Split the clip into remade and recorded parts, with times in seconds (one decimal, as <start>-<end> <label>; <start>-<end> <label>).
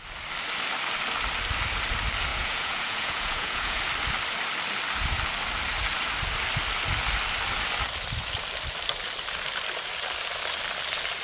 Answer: 0.0-2.3 recorded; 2.3-3.8 remade; 3.8-11.2 recorded